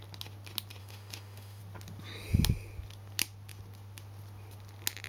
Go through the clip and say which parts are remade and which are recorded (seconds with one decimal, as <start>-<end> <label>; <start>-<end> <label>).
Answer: 0.0-0.8 recorded; 0.8-1.6 remade; 1.6-5.1 recorded